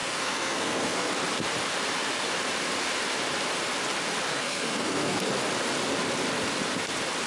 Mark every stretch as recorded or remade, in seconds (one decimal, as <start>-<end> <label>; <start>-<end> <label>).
0.0-1.1 remade; 1.1-4.3 recorded; 4.3-5.3 remade; 5.3-7.3 recorded